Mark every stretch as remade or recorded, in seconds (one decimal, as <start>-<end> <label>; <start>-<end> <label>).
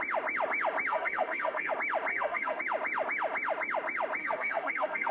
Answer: 0.0-0.9 recorded; 0.9-1.7 remade; 1.7-2.1 recorded; 2.1-2.6 remade; 2.6-4.2 recorded; 4.2-5.1 remade